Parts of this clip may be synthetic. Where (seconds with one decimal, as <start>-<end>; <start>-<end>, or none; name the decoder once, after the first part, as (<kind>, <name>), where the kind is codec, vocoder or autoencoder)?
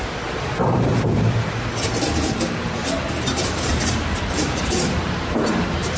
0.0-0.9 (vocoder, BigVGAN v2); 2.0-2.8; 3.4-6.0